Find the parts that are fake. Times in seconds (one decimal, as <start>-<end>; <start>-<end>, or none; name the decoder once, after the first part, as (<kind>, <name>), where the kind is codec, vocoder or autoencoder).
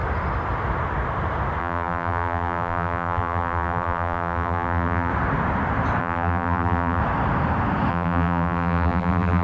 1.6-5.1 (vocoder, BigVGAN v2); 6.0-7.0; 7.9-9.4